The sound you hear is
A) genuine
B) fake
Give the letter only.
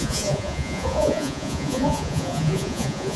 B